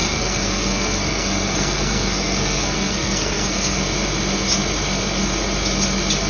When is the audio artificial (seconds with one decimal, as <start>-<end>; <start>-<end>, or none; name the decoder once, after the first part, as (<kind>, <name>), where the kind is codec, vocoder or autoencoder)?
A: 0.0-3.8 (codec, SNAC)